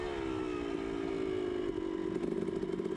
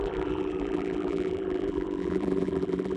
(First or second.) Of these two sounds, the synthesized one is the second